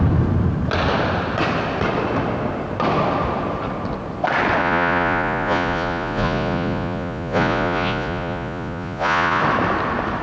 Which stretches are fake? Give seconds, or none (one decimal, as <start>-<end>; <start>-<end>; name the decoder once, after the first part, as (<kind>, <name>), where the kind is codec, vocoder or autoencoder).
4.6-9.4 (vocoder, Vocos)